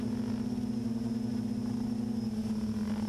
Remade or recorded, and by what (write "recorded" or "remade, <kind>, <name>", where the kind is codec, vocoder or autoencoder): recorded